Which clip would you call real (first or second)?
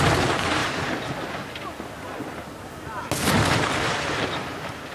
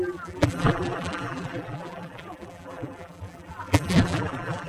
first